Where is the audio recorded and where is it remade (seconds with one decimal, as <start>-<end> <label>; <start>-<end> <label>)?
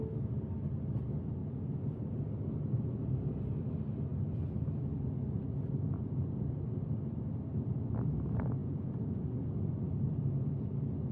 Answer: 0.0-1.4 recorded; 1.4-2.2 remade; 2.2-8.6 recorded; 8.6-9.5 remade; 9.5-11.1 recorded